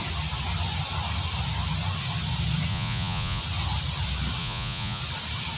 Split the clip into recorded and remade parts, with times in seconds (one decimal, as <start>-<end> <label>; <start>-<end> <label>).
0.0-2.7 recorded; 2.7-3.4 remade; 3.4-4.4 recorded; 4.4-5.0 remade; 5.0-5.6 recorded